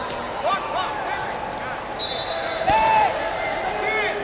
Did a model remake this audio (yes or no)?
no